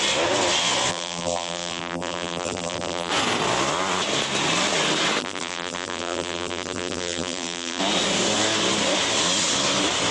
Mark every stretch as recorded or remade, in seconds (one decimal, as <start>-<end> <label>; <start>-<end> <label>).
0.0-0.9 recorded; 0.9-3.1 remade; 3.1-5.2 recorded; 5.2-7.8 remade; 7.8-10.1 recorded